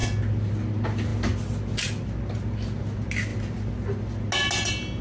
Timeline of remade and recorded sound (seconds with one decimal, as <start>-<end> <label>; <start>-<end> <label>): 0.0-5.0 recorded